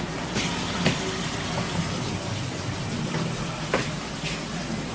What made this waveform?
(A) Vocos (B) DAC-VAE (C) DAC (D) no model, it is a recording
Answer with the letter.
D